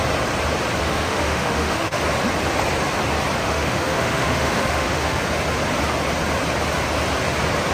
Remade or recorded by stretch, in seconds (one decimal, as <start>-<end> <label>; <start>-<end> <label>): 0.0-0.8 recorded; 0.8-2.0 remade; 2.0-3.4 recorded; 3.4-5.2 remade; 5.2-7.7 recorded